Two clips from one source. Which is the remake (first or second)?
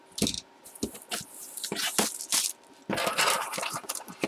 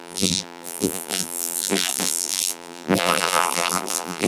second